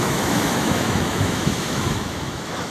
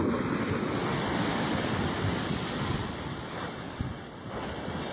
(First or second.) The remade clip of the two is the first